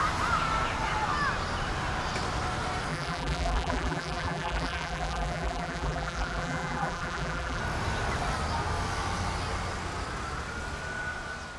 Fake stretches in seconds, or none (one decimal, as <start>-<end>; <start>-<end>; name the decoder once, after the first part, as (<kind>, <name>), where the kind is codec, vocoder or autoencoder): 2.9-7.6 (vocoder, BigVGAN v2)